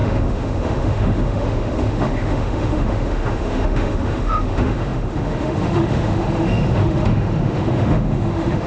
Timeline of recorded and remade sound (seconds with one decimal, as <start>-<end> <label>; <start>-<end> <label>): 0.0-8.7 remade